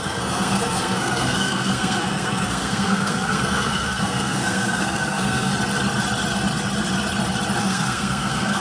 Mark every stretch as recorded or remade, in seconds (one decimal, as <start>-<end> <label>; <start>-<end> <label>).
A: 0.0-5.5 remade; 5.5-7.6 recorded; 7.6-8.6 remade